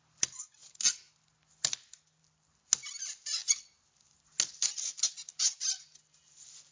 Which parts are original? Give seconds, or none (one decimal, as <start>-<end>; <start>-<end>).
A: 0.0-6.7